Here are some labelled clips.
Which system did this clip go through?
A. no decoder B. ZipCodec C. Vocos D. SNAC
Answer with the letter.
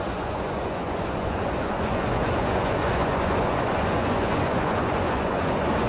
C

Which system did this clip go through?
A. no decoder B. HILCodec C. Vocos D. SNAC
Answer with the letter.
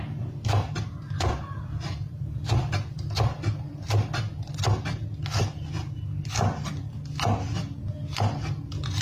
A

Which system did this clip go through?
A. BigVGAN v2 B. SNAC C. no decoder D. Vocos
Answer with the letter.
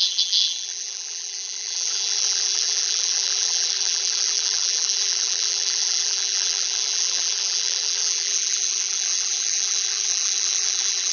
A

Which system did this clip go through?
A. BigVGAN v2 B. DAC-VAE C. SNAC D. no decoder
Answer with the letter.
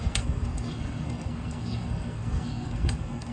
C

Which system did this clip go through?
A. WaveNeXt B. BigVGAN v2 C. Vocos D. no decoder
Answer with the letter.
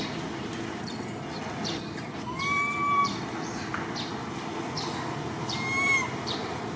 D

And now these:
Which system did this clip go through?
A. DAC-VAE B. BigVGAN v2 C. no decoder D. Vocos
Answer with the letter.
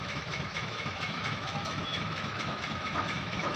A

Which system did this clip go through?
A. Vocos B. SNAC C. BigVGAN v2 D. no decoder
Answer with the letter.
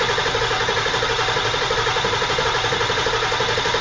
D